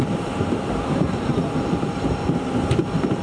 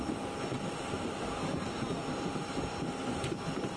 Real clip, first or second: second